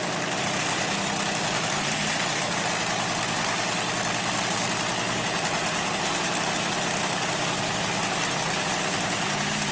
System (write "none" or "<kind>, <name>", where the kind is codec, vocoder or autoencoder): none